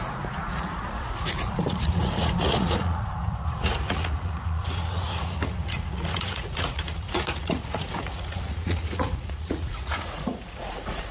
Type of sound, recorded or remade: remade